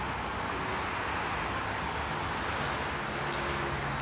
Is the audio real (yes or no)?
yes